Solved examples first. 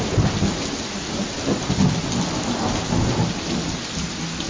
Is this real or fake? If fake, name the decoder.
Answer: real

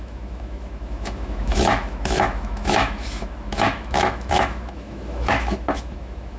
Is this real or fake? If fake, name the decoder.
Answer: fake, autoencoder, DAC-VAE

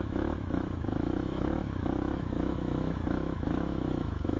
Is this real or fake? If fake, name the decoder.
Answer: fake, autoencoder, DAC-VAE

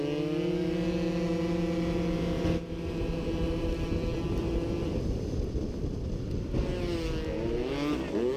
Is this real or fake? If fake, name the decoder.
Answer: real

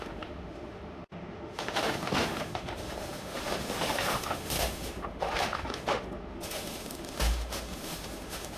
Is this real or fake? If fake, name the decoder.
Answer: fake, autoencoder, DAC-VAE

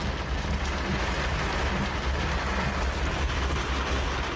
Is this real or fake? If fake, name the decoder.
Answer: real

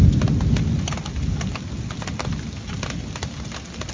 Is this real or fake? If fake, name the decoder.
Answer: real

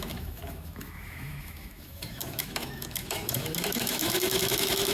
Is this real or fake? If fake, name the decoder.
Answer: fake, autoencoder, DAC-VAE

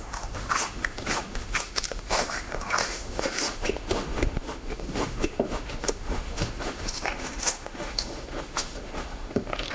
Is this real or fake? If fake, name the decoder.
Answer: fake, autoencoder, DAC-VAE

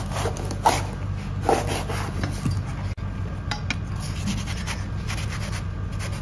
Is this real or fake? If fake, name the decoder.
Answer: real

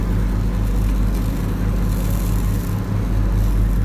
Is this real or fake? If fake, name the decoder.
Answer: real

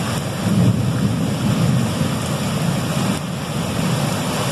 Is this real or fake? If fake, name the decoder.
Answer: real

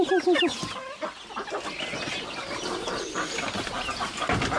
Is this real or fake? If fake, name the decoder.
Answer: real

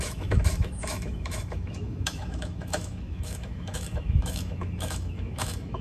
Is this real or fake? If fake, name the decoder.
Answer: fake, autoencoder, DAC-VAE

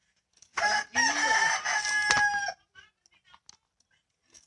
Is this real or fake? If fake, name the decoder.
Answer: real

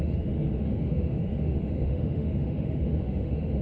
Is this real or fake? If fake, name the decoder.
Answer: fake, autoencoder, DAC-VAE